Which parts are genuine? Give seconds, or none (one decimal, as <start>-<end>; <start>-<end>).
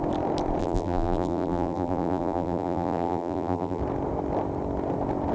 0.0-0.6; 3.8-5.3